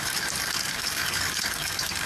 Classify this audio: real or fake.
fake